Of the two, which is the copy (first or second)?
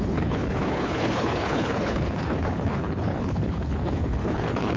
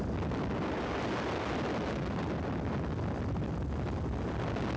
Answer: first